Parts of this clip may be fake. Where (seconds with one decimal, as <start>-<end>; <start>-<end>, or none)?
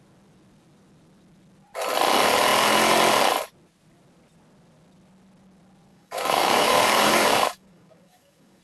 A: 5.9-8.6